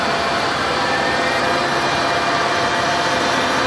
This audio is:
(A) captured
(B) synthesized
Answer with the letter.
B